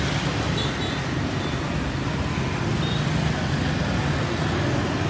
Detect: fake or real real